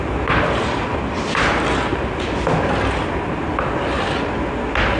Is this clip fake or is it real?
real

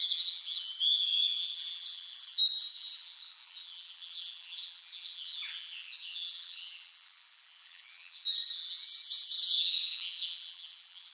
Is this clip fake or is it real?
fake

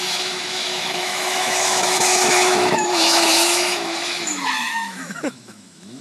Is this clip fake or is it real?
fake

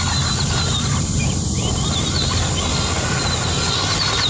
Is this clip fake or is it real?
real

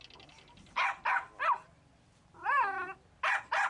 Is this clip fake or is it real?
real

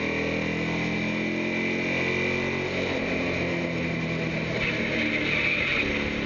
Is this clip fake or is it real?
real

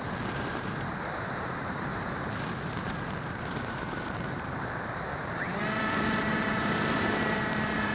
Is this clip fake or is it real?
fake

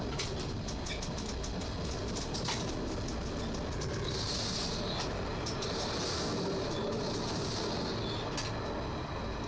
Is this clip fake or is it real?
real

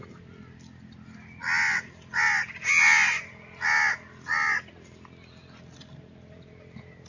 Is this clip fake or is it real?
real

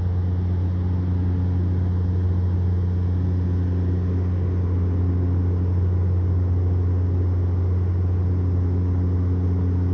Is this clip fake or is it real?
real